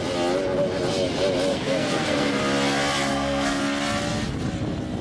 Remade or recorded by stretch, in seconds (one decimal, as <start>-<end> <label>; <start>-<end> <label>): 0.0-1.5 recorded; 1.5-2.4 remade; 2.4-3.1 recorded; 3.1-3.6 remade; 3.6-5.0 recorded